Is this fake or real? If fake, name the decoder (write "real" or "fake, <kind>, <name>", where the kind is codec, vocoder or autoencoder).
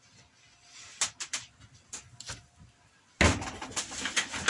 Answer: real